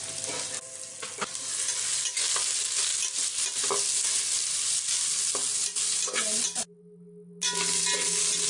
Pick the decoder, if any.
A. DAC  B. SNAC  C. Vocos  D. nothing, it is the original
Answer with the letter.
D